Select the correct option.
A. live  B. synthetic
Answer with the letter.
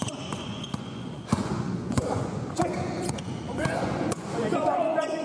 B